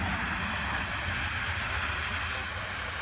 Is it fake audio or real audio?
real